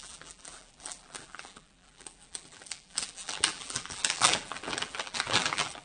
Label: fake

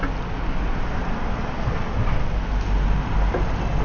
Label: real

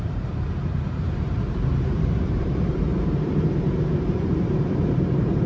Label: fake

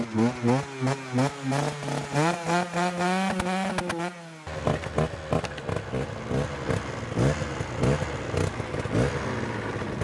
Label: real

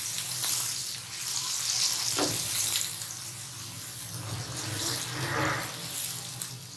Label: real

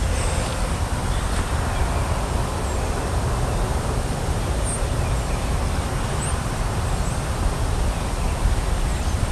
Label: real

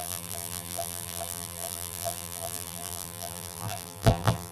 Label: fake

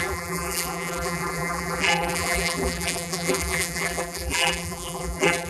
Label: fake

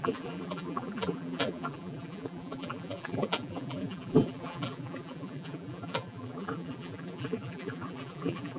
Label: fake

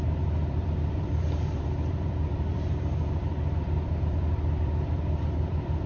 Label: fake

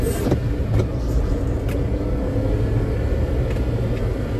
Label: real